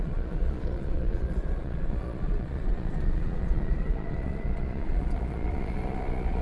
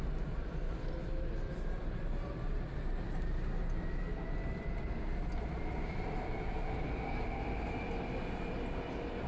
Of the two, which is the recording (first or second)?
second